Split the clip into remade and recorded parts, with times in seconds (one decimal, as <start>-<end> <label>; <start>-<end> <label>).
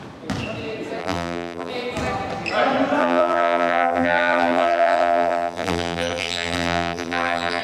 0.0-1.0 recorded; 1.0-1.7 remade; 1.7-3.0 recorded; 3.0-7.6 remade